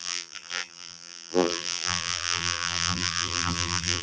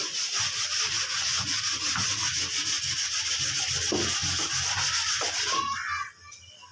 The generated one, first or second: first